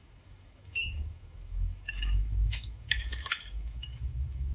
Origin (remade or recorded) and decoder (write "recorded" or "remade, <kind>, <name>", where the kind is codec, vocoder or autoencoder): remade, autoencoder, DAC-VAE